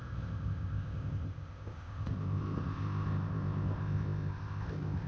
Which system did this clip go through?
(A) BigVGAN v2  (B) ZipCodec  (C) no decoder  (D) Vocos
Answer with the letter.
B